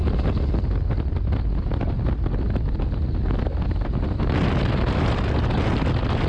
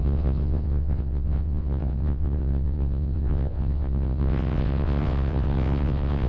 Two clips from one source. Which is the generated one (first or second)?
second